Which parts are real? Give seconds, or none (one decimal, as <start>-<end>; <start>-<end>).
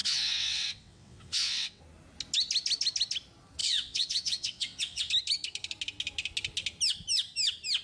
1.8-3.6; 5.1-7.8